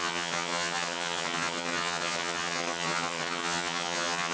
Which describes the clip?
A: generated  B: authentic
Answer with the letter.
A